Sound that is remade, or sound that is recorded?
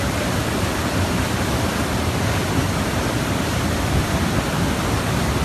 recorded